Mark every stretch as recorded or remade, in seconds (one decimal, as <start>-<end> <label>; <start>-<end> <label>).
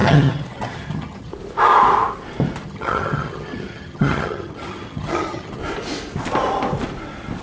0.0-1.3 remade; 1.3-2.6 recorded; 2.6-5.6 remade; 5.6-7.4 recorded